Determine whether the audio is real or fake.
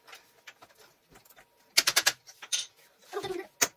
real